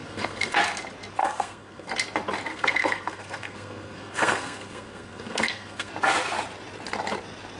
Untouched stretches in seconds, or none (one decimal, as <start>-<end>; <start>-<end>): 0.6-1.2; 1.9-2.5; 5.9-7.6